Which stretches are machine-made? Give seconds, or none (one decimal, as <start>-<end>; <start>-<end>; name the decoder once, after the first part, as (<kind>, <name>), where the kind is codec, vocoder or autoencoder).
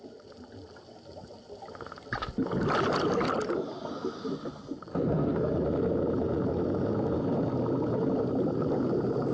4.9-5.5 (codec, SNAC)